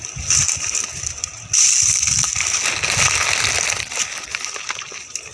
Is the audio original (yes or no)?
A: yes